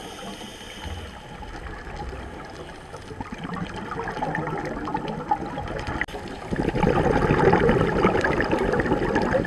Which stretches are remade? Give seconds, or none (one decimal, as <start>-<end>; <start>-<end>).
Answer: none